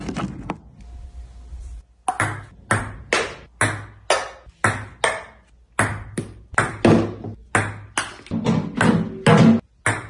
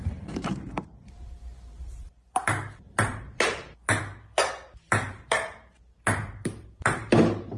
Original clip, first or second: first